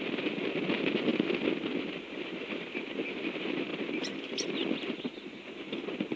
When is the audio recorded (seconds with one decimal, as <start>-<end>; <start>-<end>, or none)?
0.0-6.2